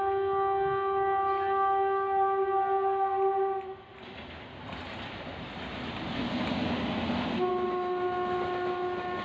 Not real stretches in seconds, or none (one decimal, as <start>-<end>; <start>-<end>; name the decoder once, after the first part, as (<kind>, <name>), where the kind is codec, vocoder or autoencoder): none